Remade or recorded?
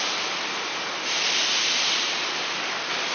recorded